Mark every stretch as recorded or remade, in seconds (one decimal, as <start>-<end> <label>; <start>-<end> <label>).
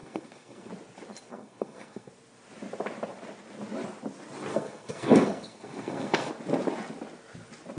0.0-0.7 remade; 0.7-1.3 recorded; 1.3-2.1 remade; 2.1-4.5 recorded; 4.5-6.3 remade; 6.3-7.8 recorded